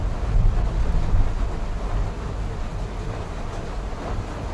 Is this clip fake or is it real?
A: real